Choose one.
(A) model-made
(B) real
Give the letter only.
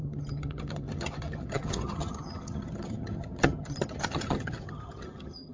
A